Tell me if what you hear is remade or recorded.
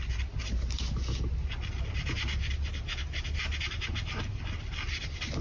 recorded